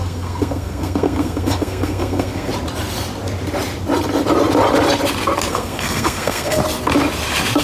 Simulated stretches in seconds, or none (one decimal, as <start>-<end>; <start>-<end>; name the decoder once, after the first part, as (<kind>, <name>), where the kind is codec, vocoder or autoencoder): 0.0-2.5 (codec, SNAC); 5.5-6.6